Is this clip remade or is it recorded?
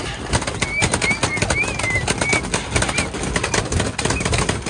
recorded